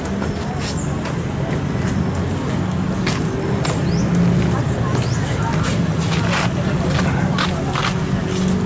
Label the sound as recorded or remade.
recorded